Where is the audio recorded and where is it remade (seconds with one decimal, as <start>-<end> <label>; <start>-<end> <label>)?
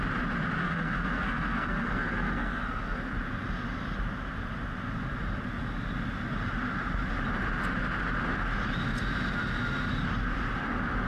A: 0.0-0.6 recorded; 0.6-3.0 remade; 3.0-11.1 recorded